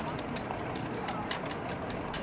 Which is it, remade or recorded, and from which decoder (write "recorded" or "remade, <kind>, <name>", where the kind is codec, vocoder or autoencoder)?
recorded